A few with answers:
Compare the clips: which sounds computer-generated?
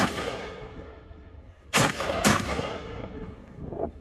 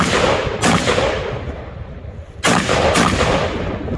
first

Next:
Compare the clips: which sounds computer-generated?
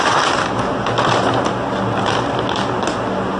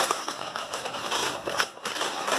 second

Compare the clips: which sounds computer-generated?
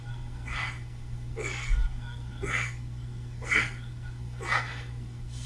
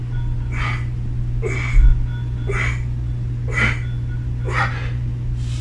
first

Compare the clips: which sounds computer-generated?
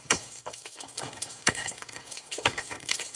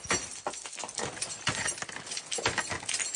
first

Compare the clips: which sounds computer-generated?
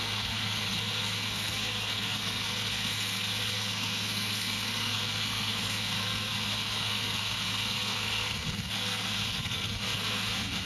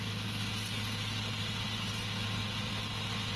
first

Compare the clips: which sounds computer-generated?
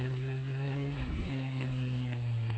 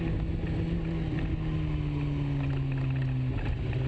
first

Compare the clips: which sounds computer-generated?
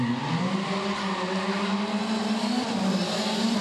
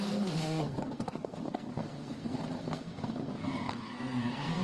second